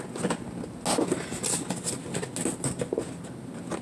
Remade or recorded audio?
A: recorded